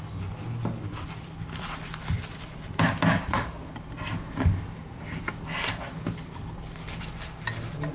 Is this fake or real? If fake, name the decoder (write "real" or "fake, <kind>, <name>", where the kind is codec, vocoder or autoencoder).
real